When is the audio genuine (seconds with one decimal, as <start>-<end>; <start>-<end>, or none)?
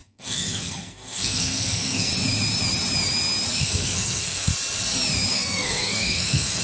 2.1-3.6; 4.5-5.3